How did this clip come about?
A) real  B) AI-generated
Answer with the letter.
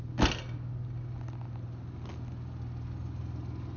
A